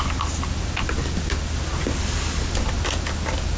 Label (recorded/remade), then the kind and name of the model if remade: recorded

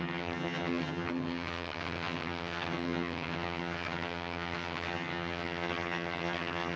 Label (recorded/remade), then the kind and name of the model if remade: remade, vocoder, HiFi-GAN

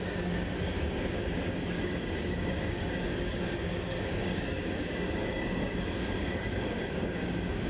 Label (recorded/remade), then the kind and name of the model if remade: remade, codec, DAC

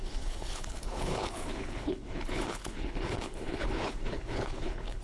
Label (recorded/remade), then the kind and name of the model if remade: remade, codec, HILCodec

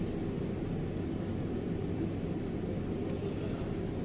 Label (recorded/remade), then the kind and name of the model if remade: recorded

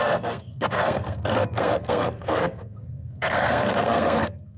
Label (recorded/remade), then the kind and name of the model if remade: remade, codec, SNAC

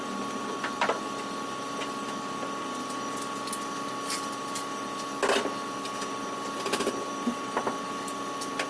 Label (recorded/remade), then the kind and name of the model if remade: recorded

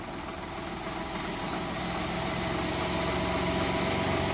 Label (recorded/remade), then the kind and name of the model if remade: recorded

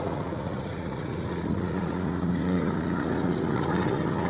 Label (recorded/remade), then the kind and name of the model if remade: remade, vocoder, Vocos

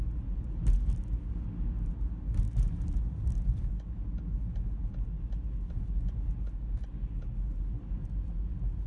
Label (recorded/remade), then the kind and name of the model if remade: recorded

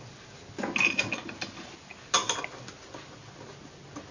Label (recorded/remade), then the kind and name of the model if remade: recorded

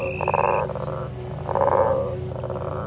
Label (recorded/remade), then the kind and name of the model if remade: recorded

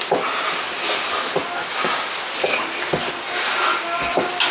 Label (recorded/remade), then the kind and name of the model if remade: recorded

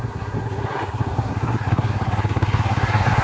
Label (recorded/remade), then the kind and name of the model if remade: remade, codec, SNAC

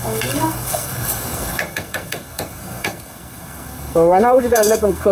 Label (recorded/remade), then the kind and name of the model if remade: remade, codec, SNAC